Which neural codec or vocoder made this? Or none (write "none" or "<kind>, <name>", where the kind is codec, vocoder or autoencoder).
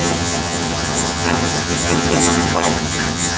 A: vocoder, HiFi-GAN